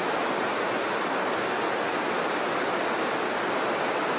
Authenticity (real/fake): real